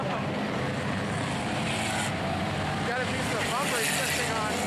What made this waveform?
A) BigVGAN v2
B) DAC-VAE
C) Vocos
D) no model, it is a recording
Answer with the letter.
D